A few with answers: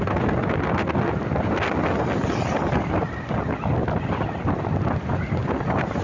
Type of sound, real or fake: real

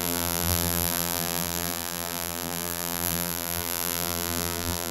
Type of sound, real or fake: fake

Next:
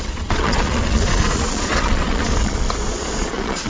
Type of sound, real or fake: fake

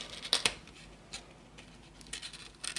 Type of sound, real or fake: real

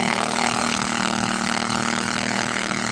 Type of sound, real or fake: fake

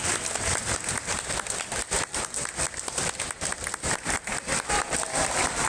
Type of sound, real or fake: real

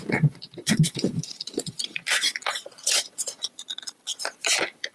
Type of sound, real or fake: fake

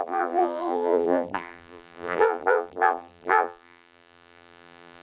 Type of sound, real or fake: fake